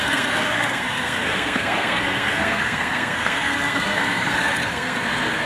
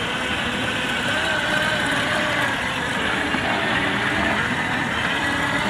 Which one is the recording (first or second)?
second